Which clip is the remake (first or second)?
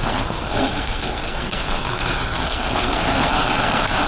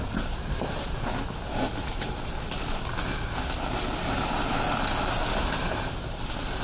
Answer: first